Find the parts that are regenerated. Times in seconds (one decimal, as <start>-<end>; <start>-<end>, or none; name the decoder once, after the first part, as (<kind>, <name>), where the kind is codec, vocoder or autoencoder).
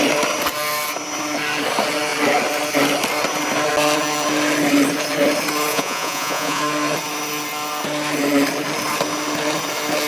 5.7-6.6 (vocoder, Vocos)